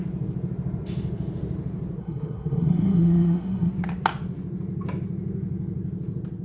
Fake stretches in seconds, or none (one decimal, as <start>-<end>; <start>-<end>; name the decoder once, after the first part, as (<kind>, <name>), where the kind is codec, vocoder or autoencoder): 2.0-3.7 (codec, SNAC)